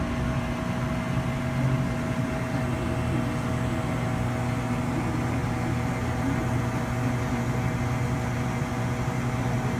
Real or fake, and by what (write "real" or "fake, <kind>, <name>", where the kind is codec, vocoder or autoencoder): real